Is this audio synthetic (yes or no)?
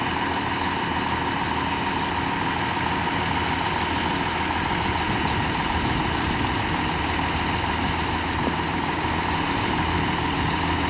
no